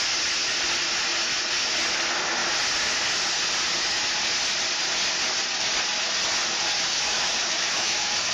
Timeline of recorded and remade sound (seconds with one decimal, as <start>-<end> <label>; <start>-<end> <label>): 0.0-6.9 recorded; 6.9-8.3 remade